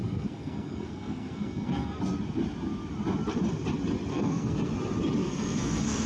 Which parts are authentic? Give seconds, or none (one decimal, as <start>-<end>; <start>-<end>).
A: 2.0-4.1; 4.7-5.2